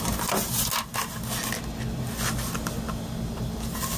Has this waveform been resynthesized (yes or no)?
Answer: no